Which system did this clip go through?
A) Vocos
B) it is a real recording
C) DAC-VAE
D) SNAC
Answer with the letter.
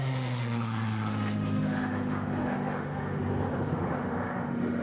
C